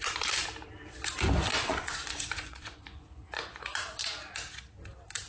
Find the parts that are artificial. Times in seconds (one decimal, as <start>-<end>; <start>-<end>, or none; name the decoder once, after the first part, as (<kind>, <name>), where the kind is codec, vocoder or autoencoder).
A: 1.5-4.0 (vocoder, Vocos)